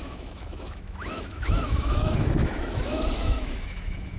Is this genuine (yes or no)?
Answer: no